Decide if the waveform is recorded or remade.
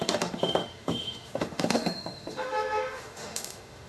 remade